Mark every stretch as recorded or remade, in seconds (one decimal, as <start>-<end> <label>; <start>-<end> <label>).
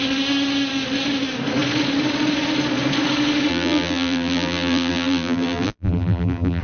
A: 0.0-3.5 recorded; 3.5-6.6 remade